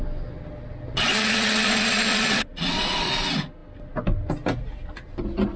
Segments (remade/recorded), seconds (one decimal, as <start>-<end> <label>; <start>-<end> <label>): 0.0-0.9 recorded; 0.9-3.1 remade; 3.1-5.6 recorded